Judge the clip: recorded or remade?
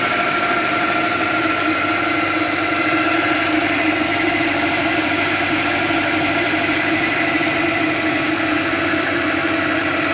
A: remade